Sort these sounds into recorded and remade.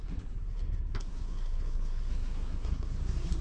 remade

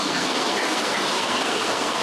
remade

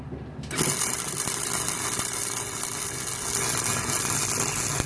recorded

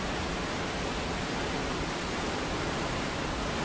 recorded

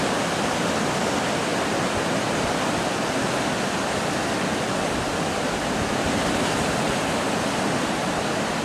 recorded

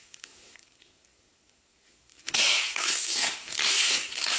remade